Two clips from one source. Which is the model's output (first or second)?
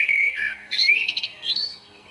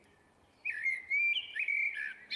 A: first